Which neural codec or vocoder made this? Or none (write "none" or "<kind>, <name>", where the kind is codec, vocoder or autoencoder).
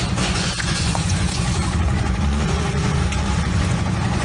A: vocoder, Vocos